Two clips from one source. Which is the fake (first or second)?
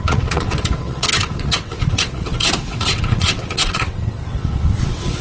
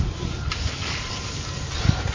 first